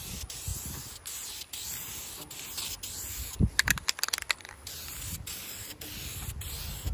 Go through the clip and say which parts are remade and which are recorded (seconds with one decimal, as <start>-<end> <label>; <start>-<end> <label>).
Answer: 0.0-0.5 remade; 0.5-4.4 recorded; 4.4-6.9 remade